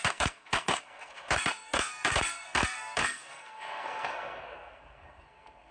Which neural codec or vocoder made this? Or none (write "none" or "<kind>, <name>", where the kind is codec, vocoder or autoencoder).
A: codec, SNAC